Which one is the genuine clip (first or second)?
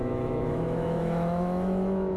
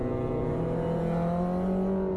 second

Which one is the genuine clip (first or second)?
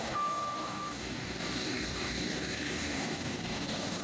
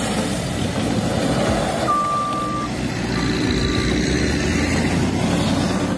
second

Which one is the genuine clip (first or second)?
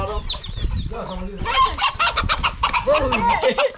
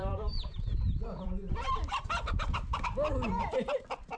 first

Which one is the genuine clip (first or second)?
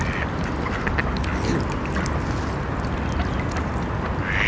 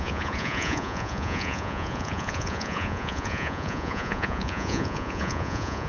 first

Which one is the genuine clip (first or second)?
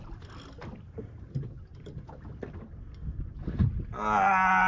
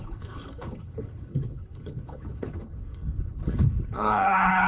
first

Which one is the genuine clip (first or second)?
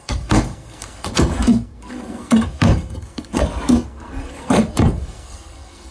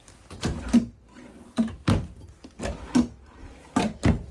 second